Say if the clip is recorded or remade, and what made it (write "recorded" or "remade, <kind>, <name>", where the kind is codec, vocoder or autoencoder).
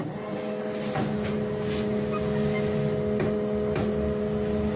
recorded